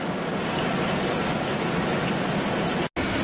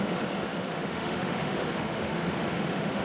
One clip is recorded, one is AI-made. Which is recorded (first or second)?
first